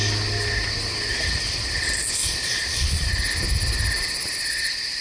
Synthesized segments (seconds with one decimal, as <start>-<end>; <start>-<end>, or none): 2.2-3.1